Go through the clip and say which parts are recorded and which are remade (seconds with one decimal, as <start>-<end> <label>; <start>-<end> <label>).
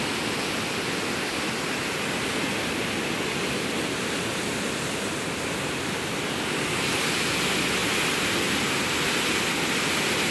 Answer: 0.0-10.3 recorded